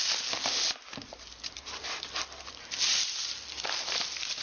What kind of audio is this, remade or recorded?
recorded